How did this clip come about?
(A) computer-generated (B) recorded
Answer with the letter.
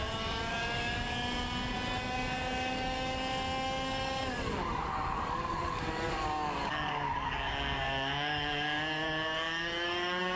A